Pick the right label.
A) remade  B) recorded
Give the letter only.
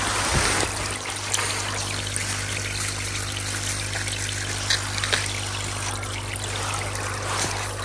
B